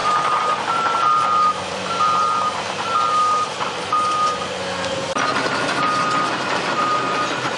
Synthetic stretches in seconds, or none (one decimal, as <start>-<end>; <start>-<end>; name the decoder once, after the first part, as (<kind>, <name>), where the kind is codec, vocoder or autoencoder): 0.0-2.8 (vocoder, BigVGAN v2); 5.3-6.3